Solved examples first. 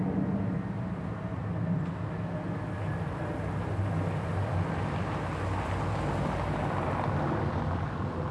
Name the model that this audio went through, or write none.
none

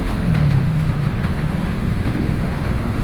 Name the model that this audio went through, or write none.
autoencoder, DAC-VAE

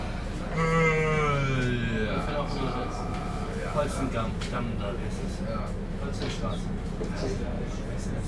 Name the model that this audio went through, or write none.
none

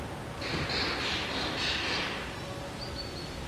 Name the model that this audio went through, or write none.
none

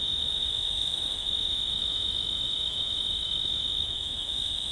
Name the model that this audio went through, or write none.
autoencoder, DAC-VAE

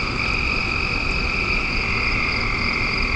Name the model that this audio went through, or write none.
none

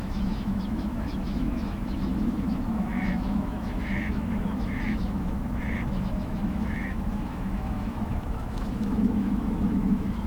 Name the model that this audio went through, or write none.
autoencoder, DAC-VAE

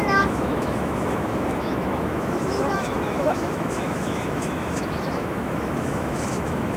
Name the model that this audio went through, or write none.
autoencoder, DAC-VAE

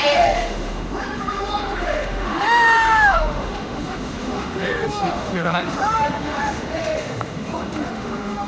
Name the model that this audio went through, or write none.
autoencoder, DAC-VAE